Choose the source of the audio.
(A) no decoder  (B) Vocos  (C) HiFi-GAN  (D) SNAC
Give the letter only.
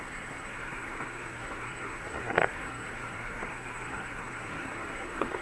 D